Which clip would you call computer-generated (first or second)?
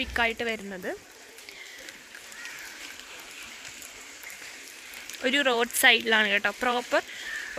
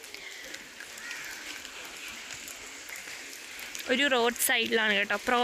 first